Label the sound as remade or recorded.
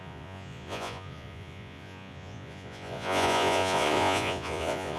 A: remade